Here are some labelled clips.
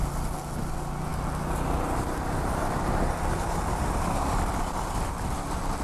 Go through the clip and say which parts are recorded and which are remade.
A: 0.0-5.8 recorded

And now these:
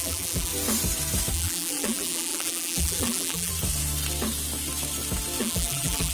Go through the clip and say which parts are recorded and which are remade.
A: 0.0-0.5 remade; 0.5-1.3 recorded; 1.3-3.5 remade; 3.5-5.4 recorded; 5.4-6.1 remade

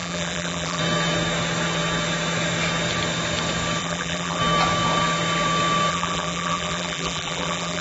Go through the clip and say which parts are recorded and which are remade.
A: 0.0-0.8 remade; 0.8-3.8 recorded; 3.8-4.4 remade; 4.4-5.9 recorded; 5.9-7.8 remade

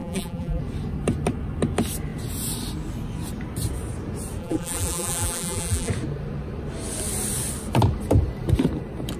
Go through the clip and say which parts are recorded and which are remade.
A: 0.0-0.6 remade; 0.6-4.4 recorded; 4.4-5.9 remade; 5.9-9.2 recorded

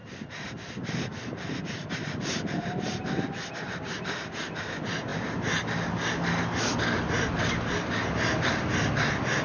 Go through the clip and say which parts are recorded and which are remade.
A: 0.0-4.4 remade; 4.4-9.4 recorded